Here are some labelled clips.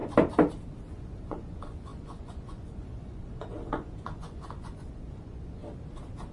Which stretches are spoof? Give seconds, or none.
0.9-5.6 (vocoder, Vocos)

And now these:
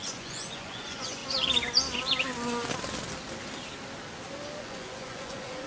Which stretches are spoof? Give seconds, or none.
0.0-1.2 (vocoder, Vocos); 4.6-5.7

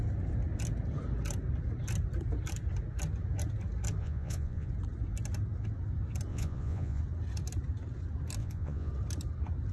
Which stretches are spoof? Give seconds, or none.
4.0-4.7 (vocoder, Vocos); 6.3-7.0; 8.4-8.9

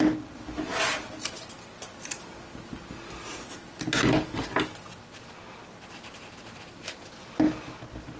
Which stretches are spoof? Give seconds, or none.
none

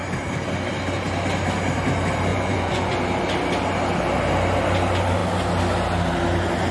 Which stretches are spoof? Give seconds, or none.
2.3-2.9 (vocoder, Vocos)

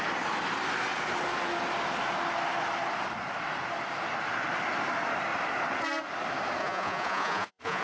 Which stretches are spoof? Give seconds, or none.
6.6-7.8 (vocoder, Vocos)

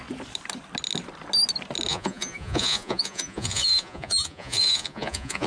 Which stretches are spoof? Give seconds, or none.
1.9-5.5 (vocoder, Vocos)